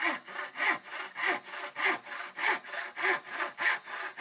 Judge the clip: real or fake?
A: real